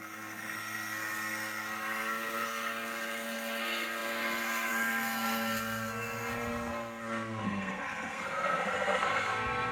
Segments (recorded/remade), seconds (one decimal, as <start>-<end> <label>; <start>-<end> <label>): 0.0-9.7 remade

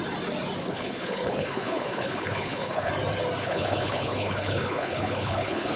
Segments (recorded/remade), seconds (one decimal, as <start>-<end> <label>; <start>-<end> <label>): 0.0-0.6 recorded; 0.6-2.9 remade; 2.9-3.4 recorded; 3.4-5.8 remade

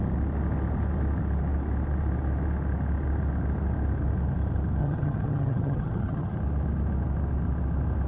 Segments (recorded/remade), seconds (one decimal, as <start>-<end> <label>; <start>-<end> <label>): 0.0-4.8 recorded; 4.8-6.4 remade; 6.4-8.1 recorded

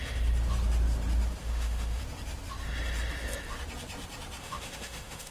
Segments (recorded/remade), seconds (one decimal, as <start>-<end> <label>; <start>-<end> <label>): 0.0-1.4 recorded; 1.4-2.0 remade; 2.0-4.4 recorded; 4.4-5.3 remade

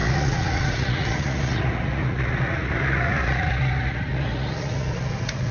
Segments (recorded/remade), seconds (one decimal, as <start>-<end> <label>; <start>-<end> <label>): 0.0-5.5 remade